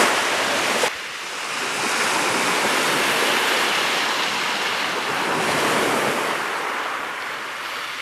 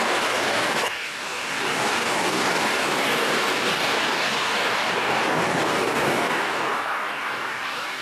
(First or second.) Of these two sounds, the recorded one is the first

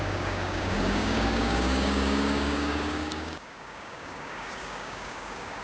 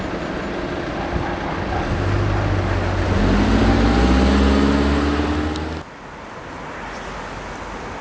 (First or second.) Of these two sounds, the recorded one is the second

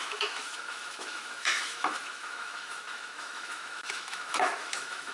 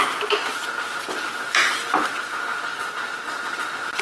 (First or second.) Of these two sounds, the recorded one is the second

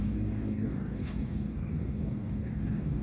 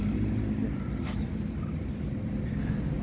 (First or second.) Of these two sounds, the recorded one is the second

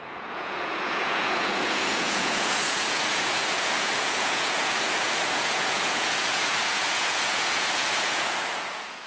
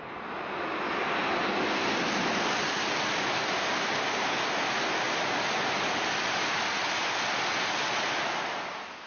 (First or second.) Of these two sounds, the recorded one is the second